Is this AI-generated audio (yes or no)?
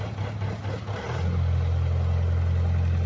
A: no